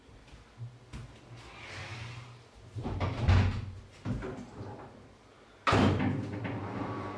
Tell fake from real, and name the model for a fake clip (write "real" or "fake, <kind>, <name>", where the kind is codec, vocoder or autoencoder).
real